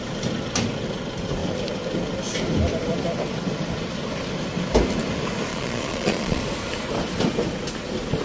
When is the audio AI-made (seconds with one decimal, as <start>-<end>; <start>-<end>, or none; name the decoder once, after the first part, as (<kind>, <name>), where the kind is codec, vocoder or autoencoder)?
5.5-6.4 (vocoder, Vocos)

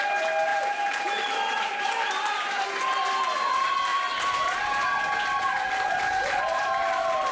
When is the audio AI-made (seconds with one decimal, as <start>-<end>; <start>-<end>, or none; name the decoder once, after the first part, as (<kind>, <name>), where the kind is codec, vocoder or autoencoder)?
0.5-2.7 (vocoder, BigVGAN v2); 3.9-4.7; 6.1-6.7